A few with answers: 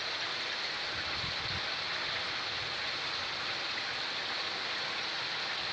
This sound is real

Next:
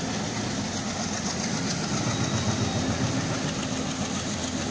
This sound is real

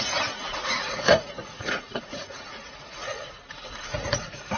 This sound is fake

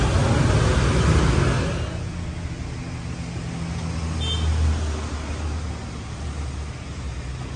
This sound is real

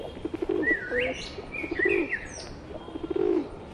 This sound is real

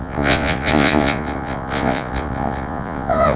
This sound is fake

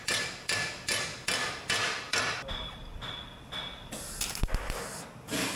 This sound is real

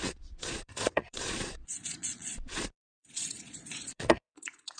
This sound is fake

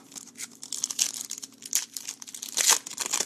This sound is real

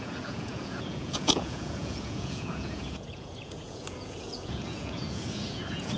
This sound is fake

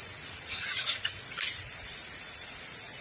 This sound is fake